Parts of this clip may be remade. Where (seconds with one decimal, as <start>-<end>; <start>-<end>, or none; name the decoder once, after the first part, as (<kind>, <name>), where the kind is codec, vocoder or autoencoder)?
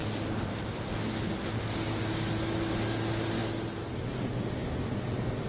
none